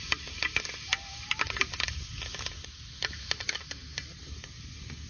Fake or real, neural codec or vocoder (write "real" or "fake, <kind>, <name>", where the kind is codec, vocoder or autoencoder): real